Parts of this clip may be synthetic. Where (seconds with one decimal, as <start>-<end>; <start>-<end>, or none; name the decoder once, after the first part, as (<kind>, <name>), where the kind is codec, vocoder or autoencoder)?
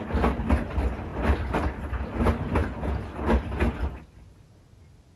none